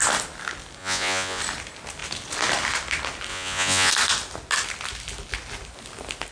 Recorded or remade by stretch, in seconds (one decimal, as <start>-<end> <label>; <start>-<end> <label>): 0.0-0.8 recorded; 0.8-1.4 remade; 1.4-3.3 recorded; 3.3-3.9 remade; 3.9-6.3 recorded

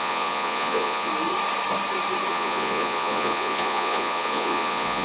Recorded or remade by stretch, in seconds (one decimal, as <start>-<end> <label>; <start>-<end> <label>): 0.0-1.1 remade; 1.1-2.3 recorded; 2.3-5.0 remade

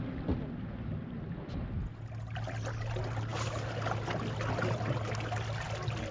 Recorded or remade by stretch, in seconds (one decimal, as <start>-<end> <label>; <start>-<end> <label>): 0.0-6.1 recorded

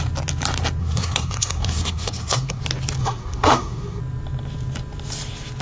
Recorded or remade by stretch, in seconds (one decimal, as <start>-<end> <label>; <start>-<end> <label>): 0.0-0.8 recorded; 0.8-2.6 remade; 2.6-3.0 recorded; 3.0-4.0 remade; 4.0-5.6 recorded

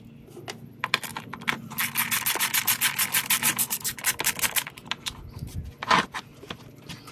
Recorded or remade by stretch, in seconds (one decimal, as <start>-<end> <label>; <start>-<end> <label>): 0.0-7.1 recorded